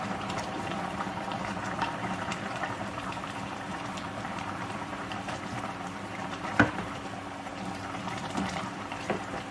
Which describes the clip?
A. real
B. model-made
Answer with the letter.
B